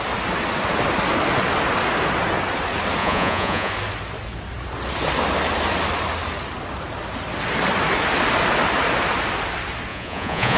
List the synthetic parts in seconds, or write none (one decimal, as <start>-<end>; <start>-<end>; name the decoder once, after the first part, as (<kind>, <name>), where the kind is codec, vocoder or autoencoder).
3.0-3.7 (vocoder, Vocos); 9.9-10.6

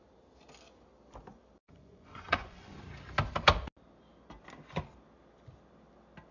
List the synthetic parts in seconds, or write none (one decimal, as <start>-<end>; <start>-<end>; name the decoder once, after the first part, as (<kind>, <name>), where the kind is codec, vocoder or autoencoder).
1.6-2.8 (vocoder, Vocos)

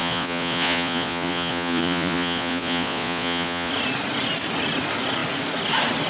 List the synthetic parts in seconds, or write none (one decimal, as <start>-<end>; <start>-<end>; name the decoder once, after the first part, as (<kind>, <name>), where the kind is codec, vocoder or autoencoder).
0.0-3.7 (vocoder, Vocos)

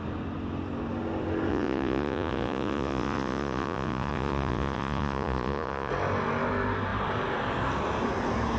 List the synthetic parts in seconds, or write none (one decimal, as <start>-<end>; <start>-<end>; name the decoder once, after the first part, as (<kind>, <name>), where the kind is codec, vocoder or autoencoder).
1.5-5.9 (vocoder, Vocos)

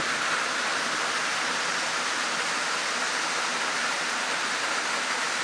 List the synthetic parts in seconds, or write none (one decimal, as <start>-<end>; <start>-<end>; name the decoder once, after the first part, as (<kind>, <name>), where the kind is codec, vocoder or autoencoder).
none

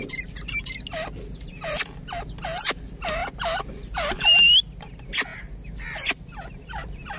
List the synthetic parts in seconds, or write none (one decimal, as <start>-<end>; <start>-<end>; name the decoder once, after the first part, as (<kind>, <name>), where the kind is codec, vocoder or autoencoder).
none

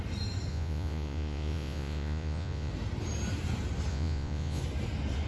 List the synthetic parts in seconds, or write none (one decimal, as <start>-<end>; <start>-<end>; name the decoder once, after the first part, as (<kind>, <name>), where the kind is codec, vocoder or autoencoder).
0.5-2.7 (vocoder, Vocos); 3.9-4.6